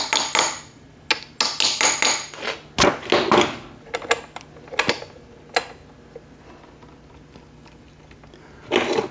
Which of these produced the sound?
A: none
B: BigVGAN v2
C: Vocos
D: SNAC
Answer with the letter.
A